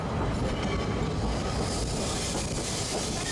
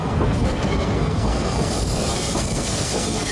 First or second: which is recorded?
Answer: first